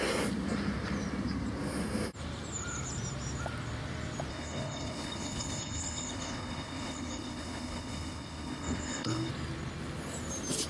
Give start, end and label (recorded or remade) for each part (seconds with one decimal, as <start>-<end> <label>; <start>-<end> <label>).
0.0-4.3 recorded; 4.3-9.3 remade; 9.3-10.7 recorded